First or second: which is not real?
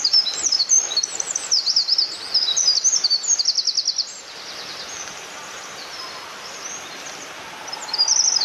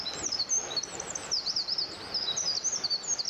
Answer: first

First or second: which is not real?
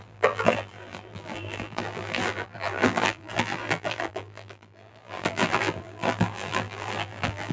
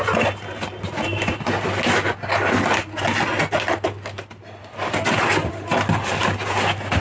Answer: first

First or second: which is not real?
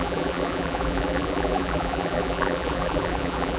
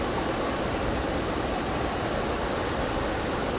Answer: first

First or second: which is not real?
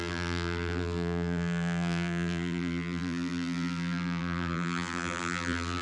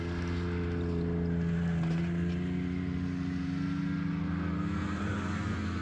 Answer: first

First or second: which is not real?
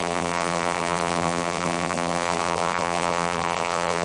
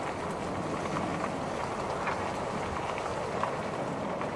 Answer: first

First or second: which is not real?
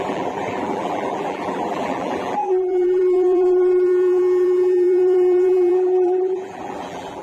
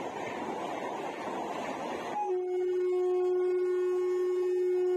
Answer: first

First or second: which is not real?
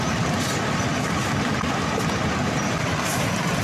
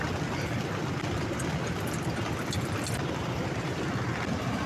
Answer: second